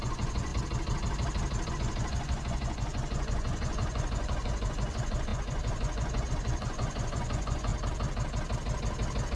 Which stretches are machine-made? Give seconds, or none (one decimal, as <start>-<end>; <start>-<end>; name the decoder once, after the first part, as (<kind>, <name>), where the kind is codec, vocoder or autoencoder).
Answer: 0.0-0.5 (vocoder, Vocos); 1.7-7.7